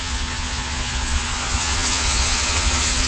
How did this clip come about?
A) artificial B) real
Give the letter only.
A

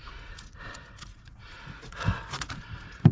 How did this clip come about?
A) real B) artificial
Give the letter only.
B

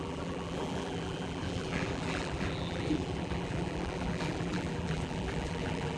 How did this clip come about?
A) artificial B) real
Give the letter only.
A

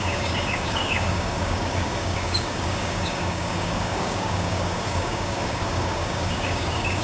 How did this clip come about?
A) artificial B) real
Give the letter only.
A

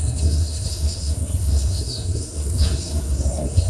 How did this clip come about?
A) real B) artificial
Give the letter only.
B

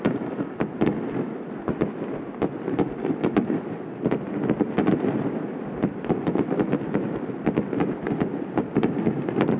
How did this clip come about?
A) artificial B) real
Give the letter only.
B